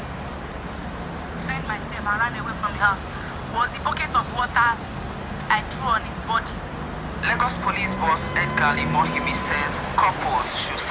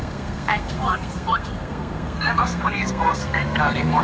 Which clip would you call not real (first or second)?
second